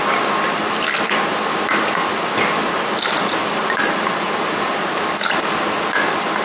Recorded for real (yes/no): yes